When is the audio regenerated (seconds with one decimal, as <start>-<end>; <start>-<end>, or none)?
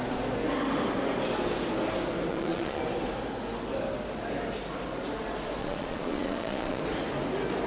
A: 2.3-2.8; 5.6-6.8